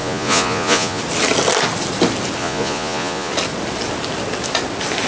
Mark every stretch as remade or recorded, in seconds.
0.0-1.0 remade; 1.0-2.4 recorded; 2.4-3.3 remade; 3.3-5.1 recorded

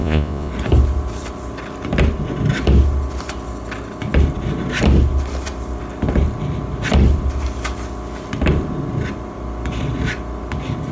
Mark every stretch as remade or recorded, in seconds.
0.0-0.5 remade; 0.5-10.9 recorded